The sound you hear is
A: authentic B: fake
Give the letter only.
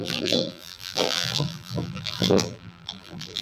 B